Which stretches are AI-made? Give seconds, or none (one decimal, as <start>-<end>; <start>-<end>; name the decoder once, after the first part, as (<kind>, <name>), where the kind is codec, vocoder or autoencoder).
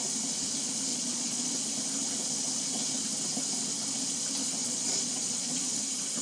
0.9-1.6 (vocoder, Vocos); 4.6-5.8